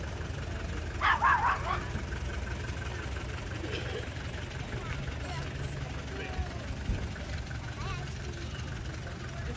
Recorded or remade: recorded